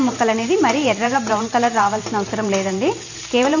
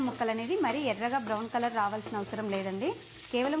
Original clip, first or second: second